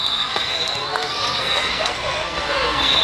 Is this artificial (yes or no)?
yes